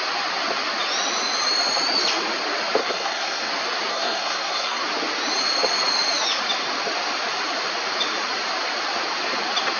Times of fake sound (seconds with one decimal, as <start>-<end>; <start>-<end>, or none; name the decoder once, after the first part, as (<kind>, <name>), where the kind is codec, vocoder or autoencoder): 2.8-3.5 (codec, SNAC); 3.9-4.8